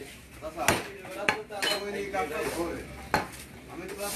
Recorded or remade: recorded